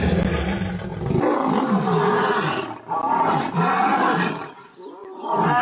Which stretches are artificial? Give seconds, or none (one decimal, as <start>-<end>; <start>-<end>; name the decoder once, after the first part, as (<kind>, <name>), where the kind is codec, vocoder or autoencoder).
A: none